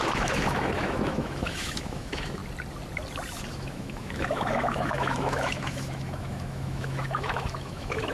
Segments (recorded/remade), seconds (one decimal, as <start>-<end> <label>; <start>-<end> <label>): 0.0-2.4 remade; 2.4-3.4 recorded; 3.4-8.1 remade